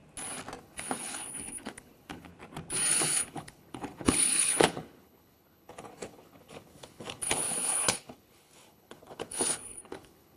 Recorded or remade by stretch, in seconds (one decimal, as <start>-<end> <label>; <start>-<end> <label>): 0.0-0.6 recorded; 0.6-2.3 remade; 2.3-2.9 recorded; 2.9-10.4 remade